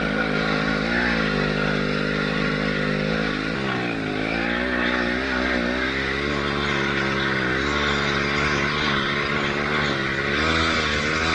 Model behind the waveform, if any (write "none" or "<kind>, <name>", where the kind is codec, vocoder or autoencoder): none